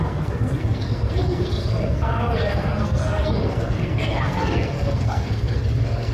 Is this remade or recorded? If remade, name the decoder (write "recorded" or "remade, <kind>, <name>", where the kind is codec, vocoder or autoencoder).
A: remade, codec, SNAC